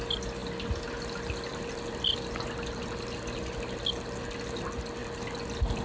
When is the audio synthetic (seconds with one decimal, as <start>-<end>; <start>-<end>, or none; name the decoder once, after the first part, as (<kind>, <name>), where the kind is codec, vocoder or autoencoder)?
none